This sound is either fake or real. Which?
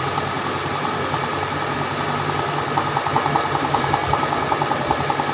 real